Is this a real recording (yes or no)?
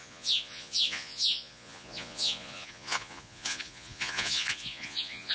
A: no